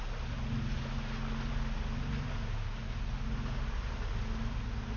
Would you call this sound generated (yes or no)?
no